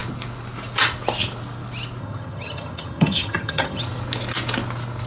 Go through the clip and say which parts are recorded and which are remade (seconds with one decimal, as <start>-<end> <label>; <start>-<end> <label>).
0.0-2.0 recorded; 2.0-3.8 remade; 3.8-5.1 recorded